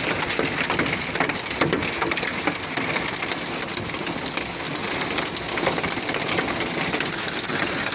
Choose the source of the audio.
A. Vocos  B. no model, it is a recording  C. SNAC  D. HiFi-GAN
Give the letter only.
B